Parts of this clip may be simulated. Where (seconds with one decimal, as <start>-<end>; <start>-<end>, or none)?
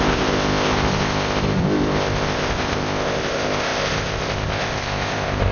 0.0-5.5